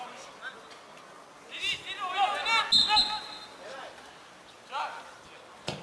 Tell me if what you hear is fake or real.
real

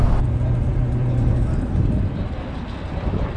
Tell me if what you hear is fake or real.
real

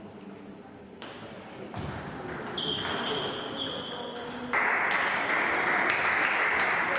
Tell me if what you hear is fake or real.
real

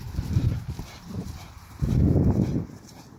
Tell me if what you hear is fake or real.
fake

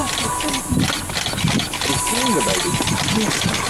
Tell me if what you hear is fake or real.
real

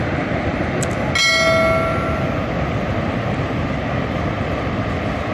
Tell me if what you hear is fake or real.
real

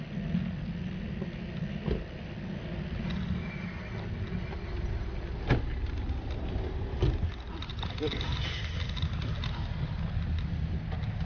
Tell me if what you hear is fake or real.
real